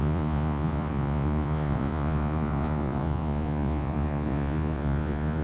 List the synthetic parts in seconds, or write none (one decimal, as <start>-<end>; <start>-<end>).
0.0-5.4